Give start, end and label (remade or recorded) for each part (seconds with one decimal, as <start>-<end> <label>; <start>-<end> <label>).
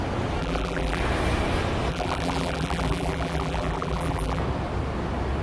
0.0-0.4 recorded; 0.4-1.0 remade; 1.0-1.9 recorded; 1.9-4.4 remade; 4.4-5.4 recorded